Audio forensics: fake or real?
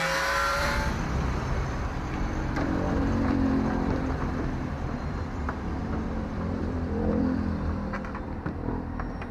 fake